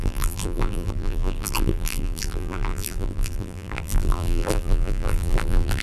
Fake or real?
fake